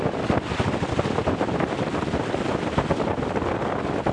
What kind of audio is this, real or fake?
real